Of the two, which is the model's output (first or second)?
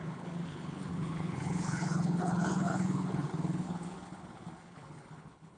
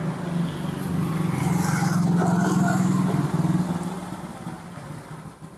first